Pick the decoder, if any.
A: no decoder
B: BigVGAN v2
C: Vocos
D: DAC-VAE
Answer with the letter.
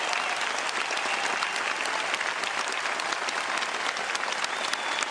A